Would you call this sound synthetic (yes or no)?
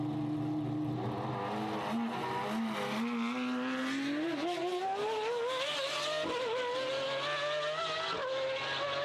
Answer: no